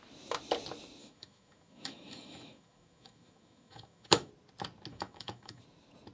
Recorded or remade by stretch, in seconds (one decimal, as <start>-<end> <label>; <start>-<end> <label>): 0.0-1.0 recorded; 1.0-4.3 remade; 4.3-4.9 recorded; 4.9-5.6 remade; 5.6-6.1 recorded